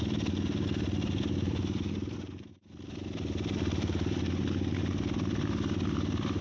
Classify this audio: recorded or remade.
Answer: recorded